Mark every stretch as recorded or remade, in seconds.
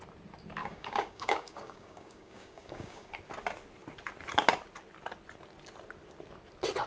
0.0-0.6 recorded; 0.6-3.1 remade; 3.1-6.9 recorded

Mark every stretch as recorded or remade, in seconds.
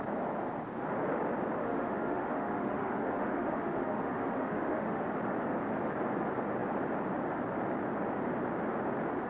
0.0-1.6 recorded; 1.6-5.0 remade; 5.0-9.3 recorded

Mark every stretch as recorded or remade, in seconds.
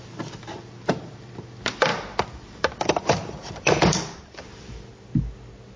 0.0-4.9 remade; 4.9-5.8 recorded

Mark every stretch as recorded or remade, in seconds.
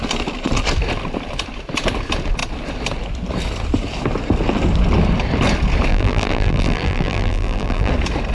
0.0-5.9 recorded; 5.9-7.9 remade; 7.9-8.3 recorded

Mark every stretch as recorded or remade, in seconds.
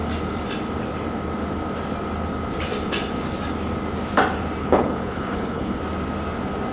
0.0-4.6 recorded; 4.6-5.8 remade; 5.8-6.7 recorded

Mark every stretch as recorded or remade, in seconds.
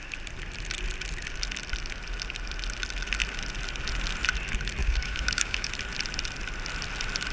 0.0-4.8 recorded; 4.8-5.7 remade; 5.7-7.3 recorded